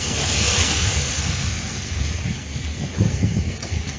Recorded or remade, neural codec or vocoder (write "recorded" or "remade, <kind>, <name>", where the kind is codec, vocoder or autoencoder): remade, codec, SNAC